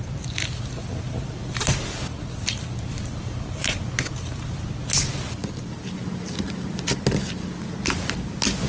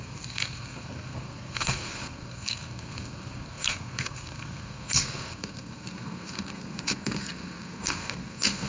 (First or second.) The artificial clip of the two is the second